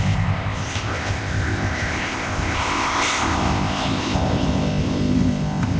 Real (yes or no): no